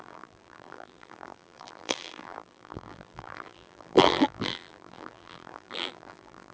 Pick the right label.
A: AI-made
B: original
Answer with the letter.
A